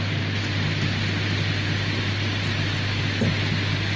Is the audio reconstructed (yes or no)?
no